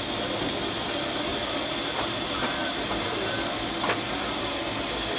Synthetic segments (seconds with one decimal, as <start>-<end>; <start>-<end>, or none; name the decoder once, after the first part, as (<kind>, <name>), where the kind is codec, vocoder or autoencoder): 1.3-4.4 (vocoder, BigVGAN v2)